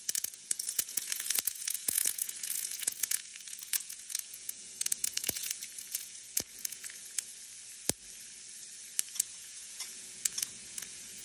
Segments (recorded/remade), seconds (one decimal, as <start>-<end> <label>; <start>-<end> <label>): 0.0-7.3 remade; 7.3-9.1 recorded; 9.1-11.2 remade